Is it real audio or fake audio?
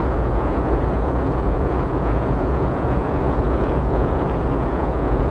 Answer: fake